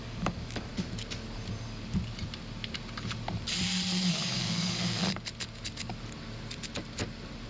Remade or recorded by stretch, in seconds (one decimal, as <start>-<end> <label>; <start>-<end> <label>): 0.0-0.7 remade; 0.7-4.1 recorded; 4.1-5.0 remade; 5.0-7.5 recorded